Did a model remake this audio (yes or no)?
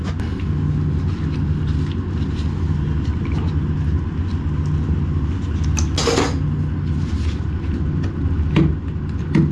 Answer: no